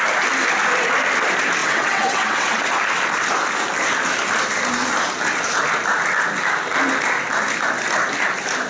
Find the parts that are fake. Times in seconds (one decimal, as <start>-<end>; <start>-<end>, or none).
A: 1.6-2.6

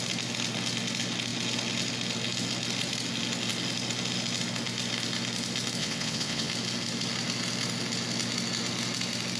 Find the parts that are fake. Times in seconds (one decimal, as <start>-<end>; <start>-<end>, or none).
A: 5.8-6.5

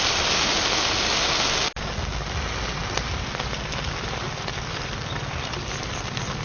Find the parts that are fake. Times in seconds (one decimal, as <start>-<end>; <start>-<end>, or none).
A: none